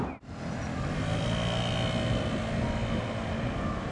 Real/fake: real